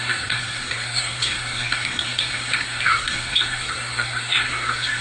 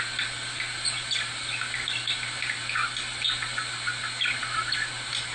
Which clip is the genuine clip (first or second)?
second